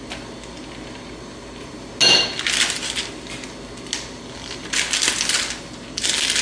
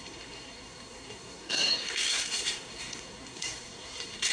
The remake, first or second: second